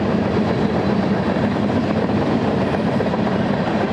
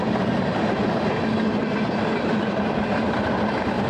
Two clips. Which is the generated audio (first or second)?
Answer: first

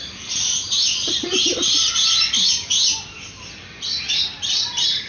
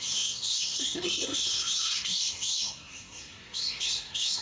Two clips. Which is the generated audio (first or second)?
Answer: second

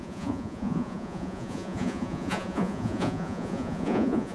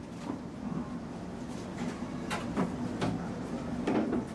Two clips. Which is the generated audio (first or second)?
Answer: first